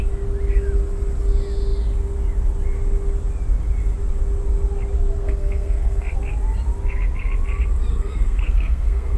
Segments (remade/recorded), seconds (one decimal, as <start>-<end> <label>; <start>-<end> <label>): 0.0-5.2 recorded; 5.2-6.2 remade; 6.2-7.9 recorded; 7.9-9.2 remade